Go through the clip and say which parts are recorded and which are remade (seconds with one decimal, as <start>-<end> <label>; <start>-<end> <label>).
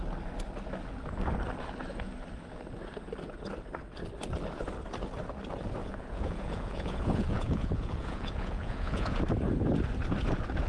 0.0-5.8 recorded; 5.8-9.2 remade; 9.2-10.7 recorded